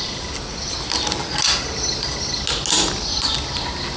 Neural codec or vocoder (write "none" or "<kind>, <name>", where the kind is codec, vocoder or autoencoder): none